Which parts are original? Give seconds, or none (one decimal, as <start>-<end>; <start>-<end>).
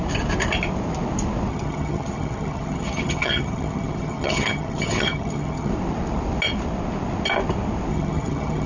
0.0-1.5; 5.7-7.9